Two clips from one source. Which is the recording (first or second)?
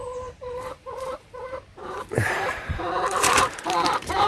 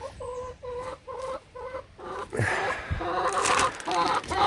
second